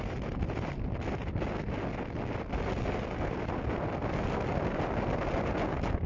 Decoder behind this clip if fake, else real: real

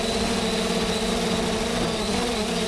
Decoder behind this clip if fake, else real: real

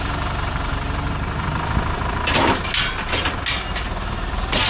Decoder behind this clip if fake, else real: real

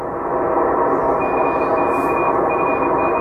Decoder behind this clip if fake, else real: real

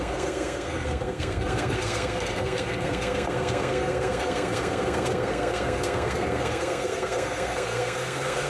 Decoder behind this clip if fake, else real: fake, codec, SNAC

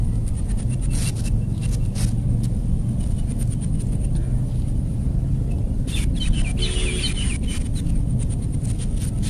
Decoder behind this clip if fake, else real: real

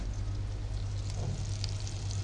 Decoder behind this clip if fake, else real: real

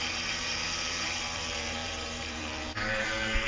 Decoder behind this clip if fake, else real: fake, vocoder, BigVGAN v2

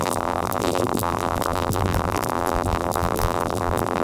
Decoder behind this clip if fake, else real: fake, vocoder, BigVGAN v2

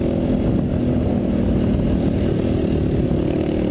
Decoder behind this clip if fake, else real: real